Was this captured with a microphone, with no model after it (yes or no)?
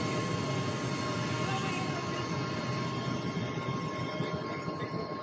yes